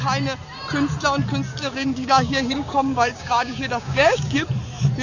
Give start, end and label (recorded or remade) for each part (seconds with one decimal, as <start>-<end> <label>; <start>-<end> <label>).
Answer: 0.0-1.5 recorded; 1.5-4.5 remade; 4.5-5.0 recorded